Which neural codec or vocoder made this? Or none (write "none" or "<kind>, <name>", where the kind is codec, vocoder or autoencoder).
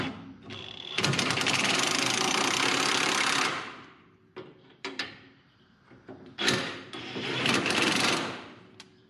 vocoder, BigVGAN v2